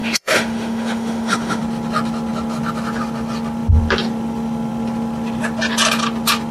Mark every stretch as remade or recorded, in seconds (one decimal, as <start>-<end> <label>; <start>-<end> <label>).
0.0-1.6 remade; 1.6-6.5 recorded